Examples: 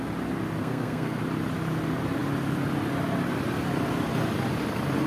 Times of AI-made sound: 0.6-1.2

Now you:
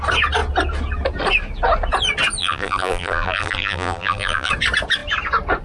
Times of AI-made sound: 2.4-4.5

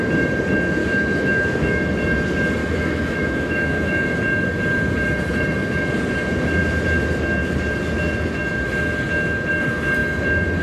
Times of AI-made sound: 0.8-1.8; 2.6-4.2

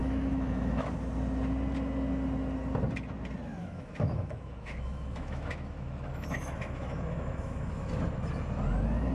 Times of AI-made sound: 0.0-0.9; 3.6-8.0

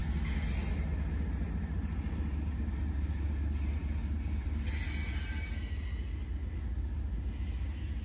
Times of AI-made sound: none

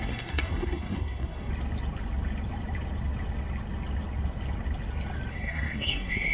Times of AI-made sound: 0.0-1.5; 5.3-6.3

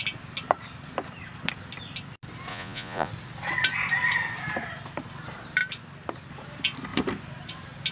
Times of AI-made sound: 2.5-3.1